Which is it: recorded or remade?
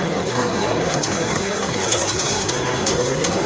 remade